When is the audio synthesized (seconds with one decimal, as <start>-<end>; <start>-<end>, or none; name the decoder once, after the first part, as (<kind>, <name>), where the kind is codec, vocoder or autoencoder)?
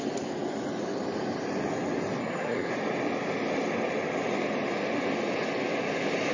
2.2-2.7 (codec, SNAC)